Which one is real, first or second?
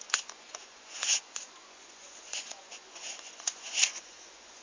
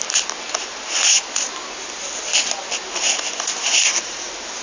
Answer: second